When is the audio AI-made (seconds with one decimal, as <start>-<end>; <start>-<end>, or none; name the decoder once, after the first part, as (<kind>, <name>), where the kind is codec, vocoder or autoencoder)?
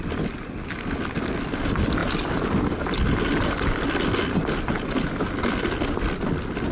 none